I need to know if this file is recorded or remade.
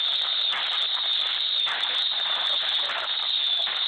recorded